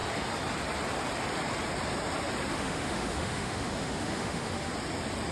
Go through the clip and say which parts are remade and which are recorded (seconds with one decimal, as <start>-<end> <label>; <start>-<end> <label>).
0.0-2.5 recorded; 2.5-4.7 remade; 4.7-5.3 recorded